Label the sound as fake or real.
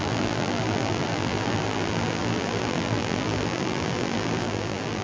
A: fake